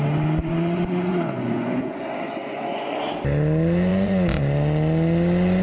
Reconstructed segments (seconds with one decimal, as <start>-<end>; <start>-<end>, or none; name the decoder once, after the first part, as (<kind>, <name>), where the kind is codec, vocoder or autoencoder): 0.4-3.0 (vocoder, Vocos); 3.9-4.4